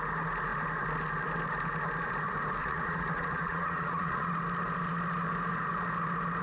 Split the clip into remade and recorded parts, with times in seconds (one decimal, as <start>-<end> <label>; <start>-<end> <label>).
0.0-2.6 recorded; 2.6-4.3 remade; 4.3-6.4 recorded